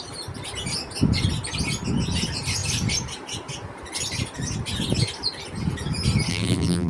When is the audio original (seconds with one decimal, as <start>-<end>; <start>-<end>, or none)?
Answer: 0.0-6.3